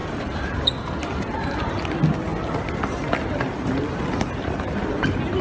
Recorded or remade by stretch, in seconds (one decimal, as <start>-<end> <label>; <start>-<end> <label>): 0.0-1.7 remade; 1.7-5.4 recorded